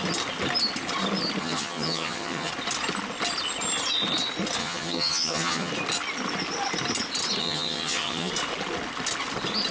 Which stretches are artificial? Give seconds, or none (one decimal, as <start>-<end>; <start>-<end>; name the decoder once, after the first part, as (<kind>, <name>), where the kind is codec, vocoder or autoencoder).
1.4-2.5 (vocoder, HiFi-GAN); 4.6-5.7; 7.4-8.3